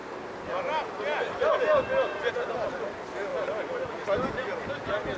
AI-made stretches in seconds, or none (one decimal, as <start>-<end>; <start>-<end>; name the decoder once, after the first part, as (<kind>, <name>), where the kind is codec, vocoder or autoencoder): none